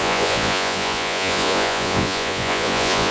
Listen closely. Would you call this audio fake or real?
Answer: fake